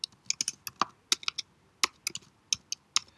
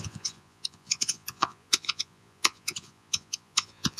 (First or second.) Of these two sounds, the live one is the first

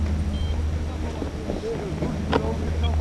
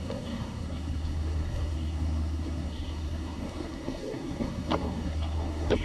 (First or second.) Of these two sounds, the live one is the first